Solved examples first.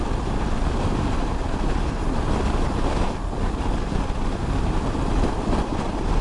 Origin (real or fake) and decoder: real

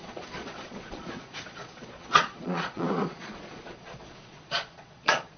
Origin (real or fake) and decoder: fake, vocoder, Vocos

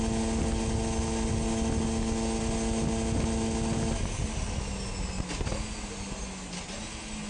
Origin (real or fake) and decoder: real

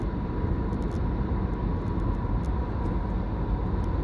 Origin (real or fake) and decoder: real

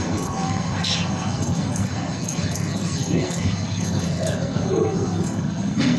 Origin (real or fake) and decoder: fake, codec, SNAC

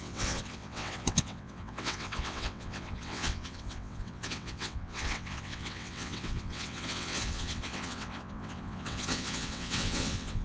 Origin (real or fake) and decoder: fake, vocoder, WaveNeXt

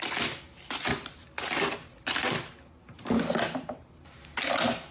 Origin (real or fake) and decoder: real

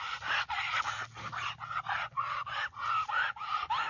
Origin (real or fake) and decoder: real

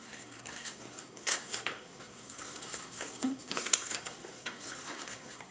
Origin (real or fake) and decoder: fake, codec, SNAC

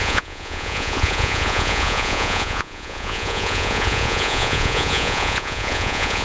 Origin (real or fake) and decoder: fake, vocoder, Vocos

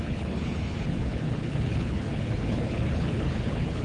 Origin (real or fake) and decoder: fake, codec, HILCodec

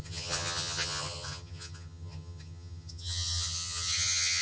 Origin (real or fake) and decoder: fake, vocoder, HiFi-GAN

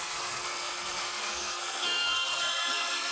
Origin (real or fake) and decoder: fake, codec, SNAC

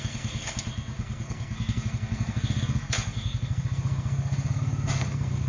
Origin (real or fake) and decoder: fake, codec, SNAC